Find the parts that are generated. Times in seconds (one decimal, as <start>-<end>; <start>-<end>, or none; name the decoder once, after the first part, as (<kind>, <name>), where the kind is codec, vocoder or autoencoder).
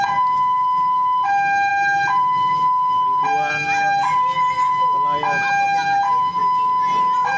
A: none